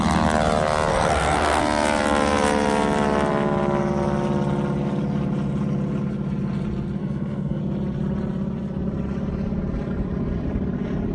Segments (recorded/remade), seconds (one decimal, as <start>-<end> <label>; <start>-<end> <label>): 0.0-0.9 recorded; 0.9-1.6 remade; 1.6-7.0 recorded; 7.0-7.6 remade; 7.6-11.1 recorded